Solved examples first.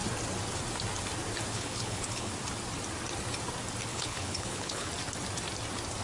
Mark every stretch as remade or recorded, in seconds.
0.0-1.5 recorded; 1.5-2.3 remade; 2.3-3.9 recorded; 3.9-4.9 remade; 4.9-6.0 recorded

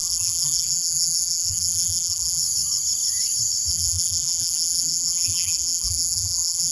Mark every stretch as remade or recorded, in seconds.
0.0-2.4 remade; 2.4-3.7 recorded; 3.7-6.7 remade

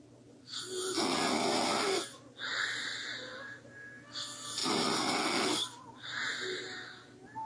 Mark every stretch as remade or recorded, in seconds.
0.0-7.5 recorded

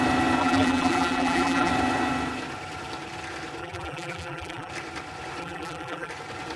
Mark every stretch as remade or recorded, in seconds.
0.0-0.4 recorded; 0.4-1.7 remade; 1.7-3.6 recorded; 3.6-4.7 remade; 4.7-5.4 recorded; 5.4-6.1 remade; 6.1-6.6 recorded

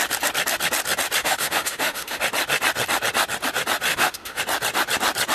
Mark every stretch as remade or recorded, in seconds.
0.0-1.2 recorded; 1.2-2.2 remade; 2.2-3.9 recorded; 3.9-4.4 remade; 4.4-5.3 recorded

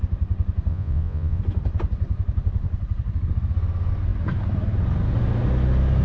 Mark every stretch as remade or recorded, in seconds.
0.0-0.7 recorded; 0.7-1.4 remade; 1.4-6.0 recorded

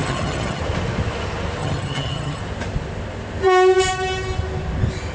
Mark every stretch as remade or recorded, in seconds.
0.0-0.6 remade; 0.6-1.6 recorded; 1.6-2.4 remade; 2.4-5.1 recorded